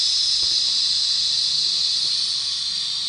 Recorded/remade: recorded